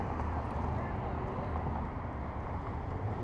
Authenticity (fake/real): fake